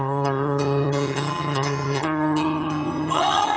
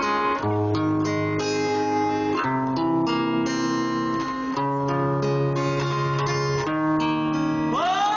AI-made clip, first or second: first